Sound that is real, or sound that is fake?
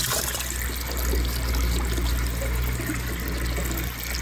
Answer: real